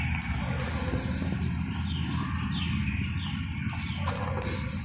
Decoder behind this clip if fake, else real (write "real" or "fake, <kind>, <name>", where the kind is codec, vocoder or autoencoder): real